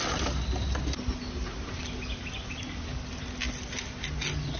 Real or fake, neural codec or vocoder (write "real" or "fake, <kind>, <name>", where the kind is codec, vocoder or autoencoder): real